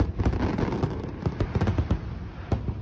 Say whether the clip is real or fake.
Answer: real